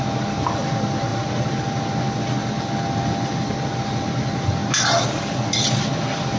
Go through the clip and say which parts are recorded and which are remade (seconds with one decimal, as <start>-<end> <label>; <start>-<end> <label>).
0.0-6.4 recorded